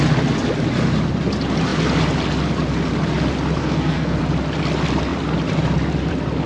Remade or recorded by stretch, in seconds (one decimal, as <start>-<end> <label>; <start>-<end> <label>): 0.0-3.6 recorded; 3.6-4.2 remade; 4.2-6.5 recorded